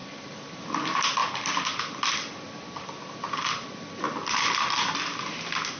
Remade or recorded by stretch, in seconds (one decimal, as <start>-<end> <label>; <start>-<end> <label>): 0.0-0.6 remade; 0.6-1.2 recorded; 1.2-4.7 remade; 4.7-5.8 recorded